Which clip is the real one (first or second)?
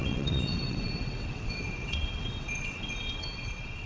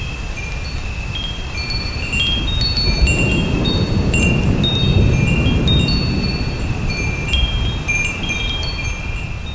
second